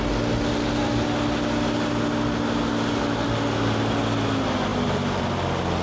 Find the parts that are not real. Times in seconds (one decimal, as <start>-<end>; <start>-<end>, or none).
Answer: none